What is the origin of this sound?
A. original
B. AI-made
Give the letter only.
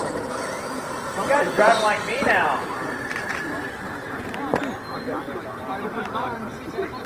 B